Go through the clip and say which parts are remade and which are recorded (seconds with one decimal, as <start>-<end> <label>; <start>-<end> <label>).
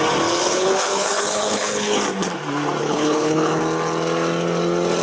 0.0-0.4 recorded; 0.4-2.0 remade; 2.0-2.8 recorded; 2.8-3.6 remade; 3.6-5.0 recorded